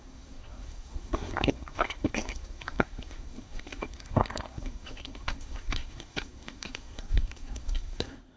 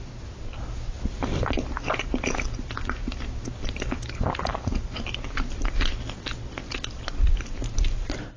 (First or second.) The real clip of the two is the second